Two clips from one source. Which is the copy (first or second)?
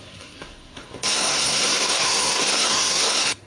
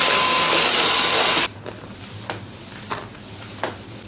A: first